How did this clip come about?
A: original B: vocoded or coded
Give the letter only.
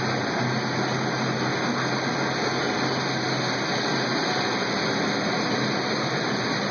A